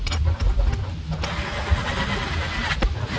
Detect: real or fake real